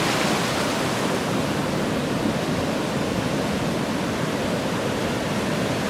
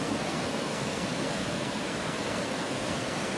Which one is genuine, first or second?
first